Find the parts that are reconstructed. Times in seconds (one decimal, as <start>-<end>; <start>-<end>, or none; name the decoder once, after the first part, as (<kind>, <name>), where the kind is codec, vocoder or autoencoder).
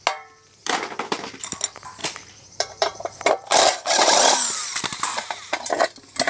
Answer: 0.6-1.4 (vocoder, BigVGAN v2); 2.0-5.8